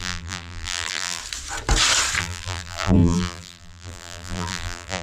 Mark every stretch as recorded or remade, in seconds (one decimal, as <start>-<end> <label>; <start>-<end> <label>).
0.0-1.2 remade; 1.2-2.2 recorded; 2.2-5.0 remade